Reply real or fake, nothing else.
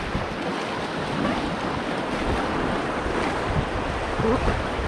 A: real